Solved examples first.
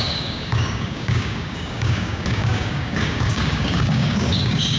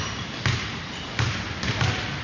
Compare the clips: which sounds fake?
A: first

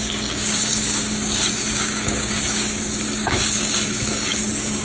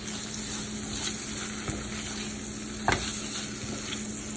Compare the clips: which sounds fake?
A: first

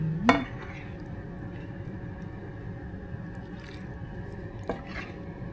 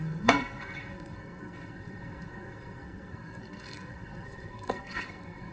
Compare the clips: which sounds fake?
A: second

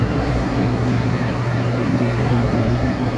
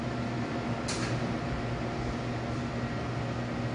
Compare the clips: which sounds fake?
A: first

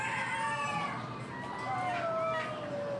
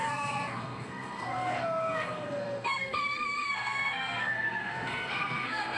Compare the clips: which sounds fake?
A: second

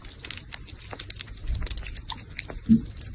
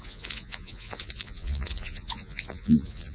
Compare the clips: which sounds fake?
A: second